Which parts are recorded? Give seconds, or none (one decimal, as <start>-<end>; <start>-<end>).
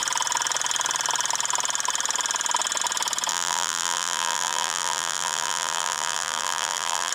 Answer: 0.0-3.3